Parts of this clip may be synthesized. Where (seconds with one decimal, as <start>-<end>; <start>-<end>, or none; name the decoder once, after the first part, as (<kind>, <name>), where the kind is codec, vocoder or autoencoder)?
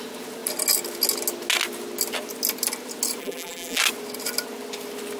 3.2-3.8 (vocoder, BigVGAN v2)